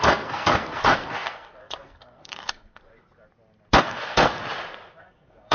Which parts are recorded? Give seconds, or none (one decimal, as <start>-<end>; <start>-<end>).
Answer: 2.9-3.8; 4.4-5.0